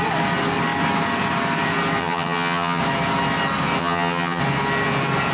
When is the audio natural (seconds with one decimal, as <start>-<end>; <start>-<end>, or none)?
0.0-2.0; 2.8-3.8; 4.4-5.3